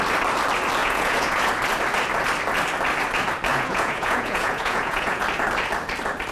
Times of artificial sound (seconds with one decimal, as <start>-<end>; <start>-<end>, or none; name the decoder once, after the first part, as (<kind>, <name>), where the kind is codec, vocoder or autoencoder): 0.8-1.5 (vocoder, Vocos); 3.5-5.2